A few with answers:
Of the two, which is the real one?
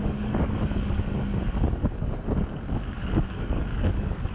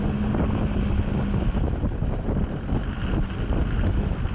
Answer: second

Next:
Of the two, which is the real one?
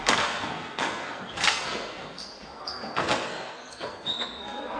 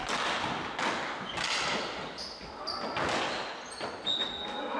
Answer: second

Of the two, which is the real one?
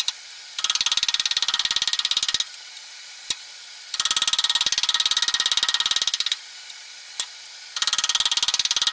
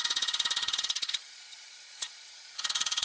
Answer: first